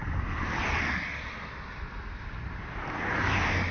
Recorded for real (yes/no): yes